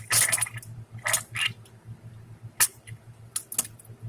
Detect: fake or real real